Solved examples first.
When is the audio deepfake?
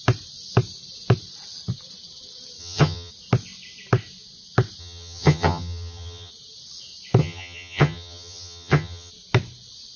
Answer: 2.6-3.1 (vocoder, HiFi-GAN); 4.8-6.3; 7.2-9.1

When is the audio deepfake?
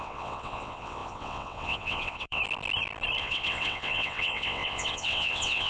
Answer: 0.0-2.4 (vocoder, WaveNeXt); 3.2-5.7